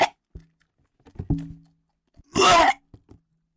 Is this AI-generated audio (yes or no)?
no